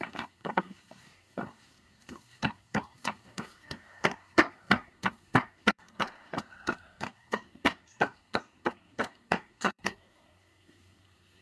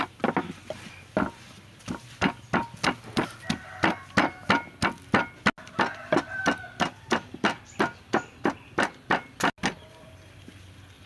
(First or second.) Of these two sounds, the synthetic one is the first